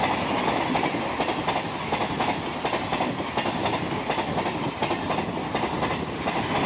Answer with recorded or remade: recorded